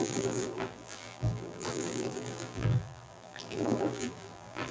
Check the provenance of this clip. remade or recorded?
remade